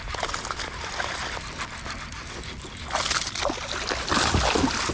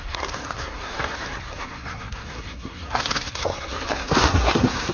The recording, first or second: first